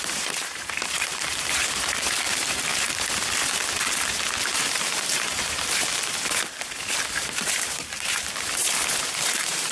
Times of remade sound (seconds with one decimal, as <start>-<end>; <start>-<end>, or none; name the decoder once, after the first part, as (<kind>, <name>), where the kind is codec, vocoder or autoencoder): 0.0-2.7 (vocoder, BigVGAN v2); 4.6-5.9; 7.1-8.6; 9.2-9.7